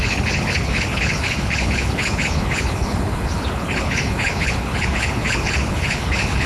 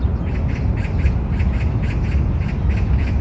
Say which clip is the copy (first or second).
first